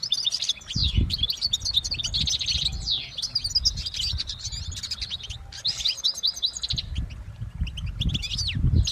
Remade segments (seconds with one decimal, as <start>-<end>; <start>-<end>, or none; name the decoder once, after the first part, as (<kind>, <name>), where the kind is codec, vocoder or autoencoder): none